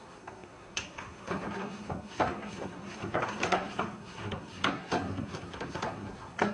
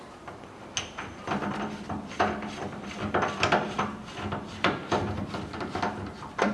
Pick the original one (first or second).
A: second